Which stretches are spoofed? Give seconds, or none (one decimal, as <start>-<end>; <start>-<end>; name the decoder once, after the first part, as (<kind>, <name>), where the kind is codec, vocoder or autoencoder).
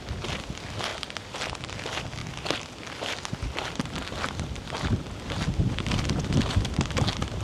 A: 0.9-1.7 (vocoder, BigVGAN v2)